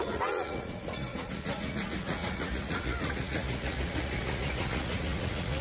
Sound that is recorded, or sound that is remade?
remade